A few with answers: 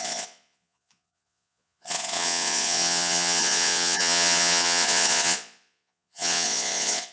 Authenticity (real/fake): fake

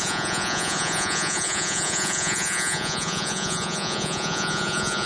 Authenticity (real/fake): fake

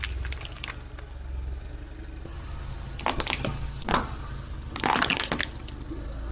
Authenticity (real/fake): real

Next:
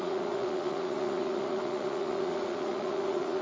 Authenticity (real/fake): fake